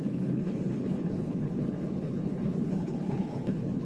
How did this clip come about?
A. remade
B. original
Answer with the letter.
A